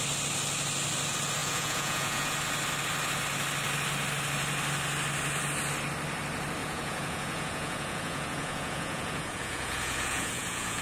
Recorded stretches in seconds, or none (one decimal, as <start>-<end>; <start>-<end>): 0.0-1.4; 2.3-6.6